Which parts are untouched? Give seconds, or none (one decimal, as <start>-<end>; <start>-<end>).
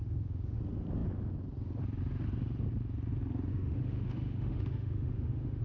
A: 0.6-3.5